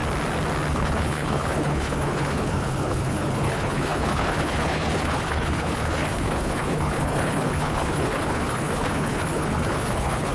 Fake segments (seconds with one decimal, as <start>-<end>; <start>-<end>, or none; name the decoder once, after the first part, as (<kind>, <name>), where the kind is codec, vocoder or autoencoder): 0.7-10.3 (codec, HILCodec)

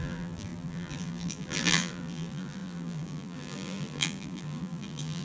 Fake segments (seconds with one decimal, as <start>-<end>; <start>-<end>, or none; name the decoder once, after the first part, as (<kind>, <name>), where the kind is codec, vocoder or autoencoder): 0.0-5.2 (vocoder, BigVGAN v2)